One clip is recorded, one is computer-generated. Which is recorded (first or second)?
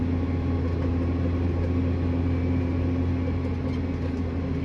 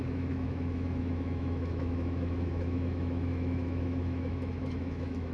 first